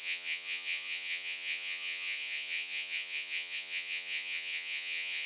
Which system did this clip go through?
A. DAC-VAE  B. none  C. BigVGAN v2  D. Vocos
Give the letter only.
D